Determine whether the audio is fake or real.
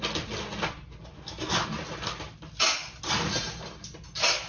real